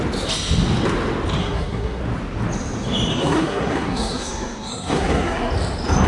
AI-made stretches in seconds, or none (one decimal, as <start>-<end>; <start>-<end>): 1.4-2.0; 3.1-5.5